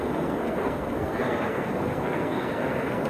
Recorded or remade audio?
remade